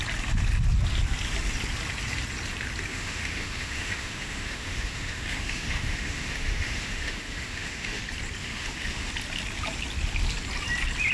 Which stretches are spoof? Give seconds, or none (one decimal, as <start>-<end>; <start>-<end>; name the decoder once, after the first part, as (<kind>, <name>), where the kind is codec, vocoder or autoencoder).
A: 2.9-8.0 (autoencoder, DAC-VAE); 8.4-9.1